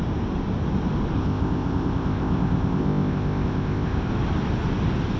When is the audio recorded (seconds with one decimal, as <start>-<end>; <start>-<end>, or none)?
0.0-1.2; 4.1-5.2